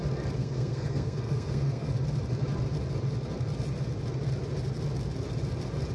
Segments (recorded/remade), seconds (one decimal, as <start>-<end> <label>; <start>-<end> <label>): 0.0-0.4 recorded; 0.4-1.9 remade; 1.9-5.9 recorded